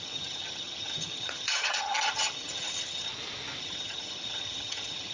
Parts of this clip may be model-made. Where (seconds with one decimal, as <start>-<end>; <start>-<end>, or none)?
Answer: 0.0-3.1; 3.6-5.1